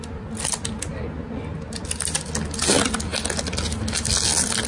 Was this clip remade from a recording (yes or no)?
no